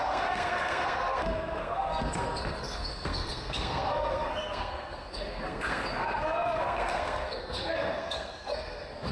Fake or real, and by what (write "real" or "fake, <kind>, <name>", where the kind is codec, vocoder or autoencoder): fake, codec, SNAC